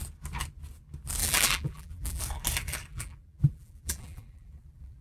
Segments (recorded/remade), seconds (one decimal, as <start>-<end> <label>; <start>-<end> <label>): 0.0-1.2 recorded; 1.2-2.2 remade; 2.2-2.9 recorded; 2.9-5.0 remade